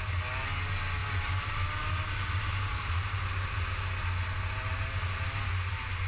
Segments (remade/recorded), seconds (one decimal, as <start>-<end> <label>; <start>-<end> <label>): 0.0-1.0 recorded; 1.0-3.5 remade; 3.5-6.1 recorded